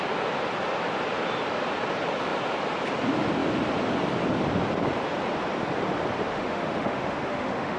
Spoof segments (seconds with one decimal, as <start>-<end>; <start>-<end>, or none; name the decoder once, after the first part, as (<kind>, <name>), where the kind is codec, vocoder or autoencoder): 6.3-7.8 (autoencoder, DAC-VAE)